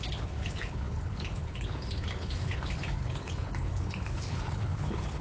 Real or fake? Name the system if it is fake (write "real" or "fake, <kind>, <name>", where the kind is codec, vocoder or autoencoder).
fake, codec, HILCodec